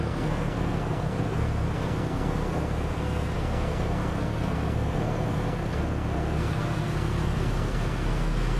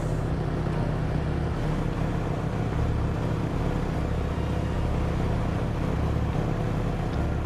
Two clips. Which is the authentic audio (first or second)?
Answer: second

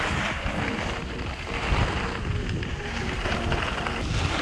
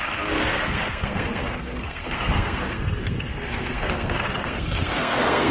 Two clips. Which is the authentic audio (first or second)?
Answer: first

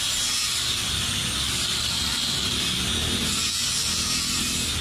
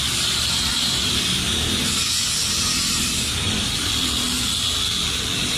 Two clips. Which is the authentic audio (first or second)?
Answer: first